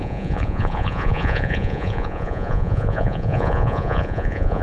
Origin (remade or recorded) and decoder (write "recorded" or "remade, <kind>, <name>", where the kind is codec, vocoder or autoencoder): remade, vocoder, Vocos